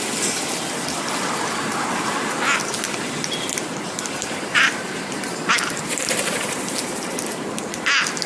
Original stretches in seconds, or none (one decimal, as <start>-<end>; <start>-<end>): 0.0-4.2; 7.5-8.3